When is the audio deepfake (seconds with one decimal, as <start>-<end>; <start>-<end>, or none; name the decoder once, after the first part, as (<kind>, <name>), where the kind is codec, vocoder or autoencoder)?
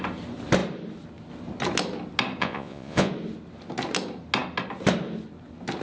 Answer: 2.4-3.1 (vocoder, Vocos)